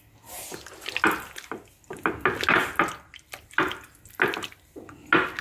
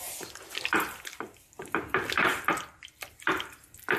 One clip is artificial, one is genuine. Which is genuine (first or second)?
first